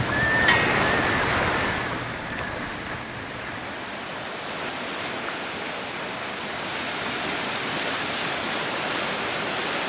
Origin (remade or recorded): recorded